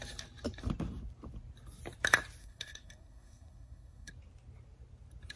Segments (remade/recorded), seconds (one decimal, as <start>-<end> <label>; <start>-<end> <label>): 0.0-2.4 recorded; 2.4-4.1 remade; 4.1-5.4 recorded